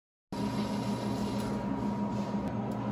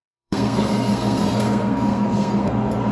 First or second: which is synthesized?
second